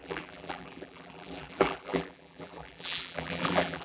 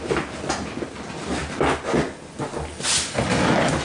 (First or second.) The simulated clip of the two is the first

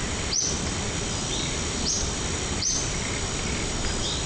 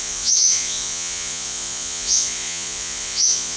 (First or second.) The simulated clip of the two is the second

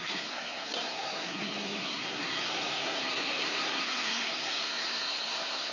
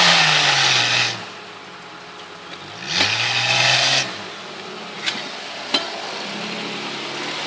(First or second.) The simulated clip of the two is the first